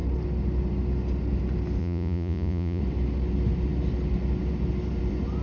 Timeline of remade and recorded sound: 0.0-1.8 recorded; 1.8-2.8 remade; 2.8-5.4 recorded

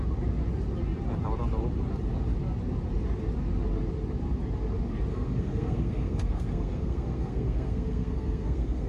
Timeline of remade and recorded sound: 0.0-5.1 recorded; 5.1-8.9 remade

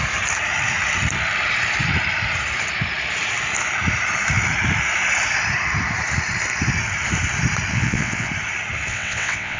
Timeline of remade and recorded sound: 0.0-7.7 recorded; 7.7-8.3 remade; 8.3-8.9 recorded; 8.9-9.6 remade

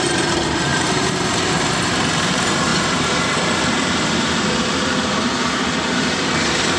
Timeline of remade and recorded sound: 0.0-6.8 remade

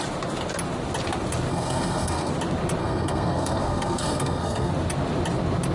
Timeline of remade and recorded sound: 0.0-1.5 recorded; 1.5-2.3 remade; 2.3-2.8 recorded; 2.8-4.7 remade; 4.7-5.7 recorded

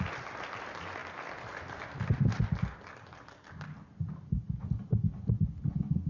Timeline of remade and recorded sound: 0.0-6.1 recorded

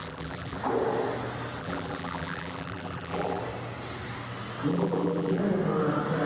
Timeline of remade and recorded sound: 0.0-0.6 remade; 0.6-1.6 recorded; 1.6-3.4 remade; 3.4-4.7 recorded; 4.7-5.4 remade; 5.4-6.3 recorded